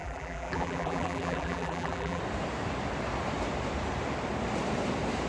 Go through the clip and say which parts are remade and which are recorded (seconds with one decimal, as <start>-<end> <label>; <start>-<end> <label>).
0.0-2.2 remade; 2.2-5.3 recorded